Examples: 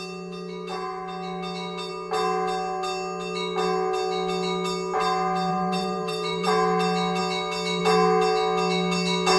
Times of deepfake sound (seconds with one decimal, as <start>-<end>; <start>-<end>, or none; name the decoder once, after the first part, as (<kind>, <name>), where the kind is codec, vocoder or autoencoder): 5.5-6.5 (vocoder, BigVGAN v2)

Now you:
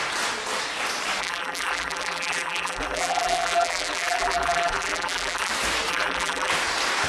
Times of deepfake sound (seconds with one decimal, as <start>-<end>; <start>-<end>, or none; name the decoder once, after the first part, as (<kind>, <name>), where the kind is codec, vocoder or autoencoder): 1.2-5.5 (vocoder, BigVGAN v2); 5.9-6.5

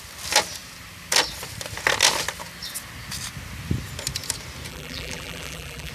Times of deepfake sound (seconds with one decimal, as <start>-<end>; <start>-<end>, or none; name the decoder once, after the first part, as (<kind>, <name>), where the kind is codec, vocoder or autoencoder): 4.7-5.9 (vocoder, BigVGAN v2)